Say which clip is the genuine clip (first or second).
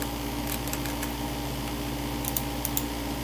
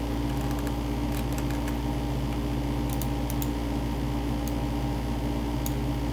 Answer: second